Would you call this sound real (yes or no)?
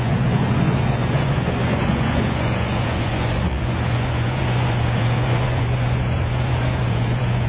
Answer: no